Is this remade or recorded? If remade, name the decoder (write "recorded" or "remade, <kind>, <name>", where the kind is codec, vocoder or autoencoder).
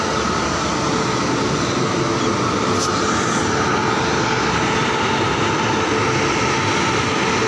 recorded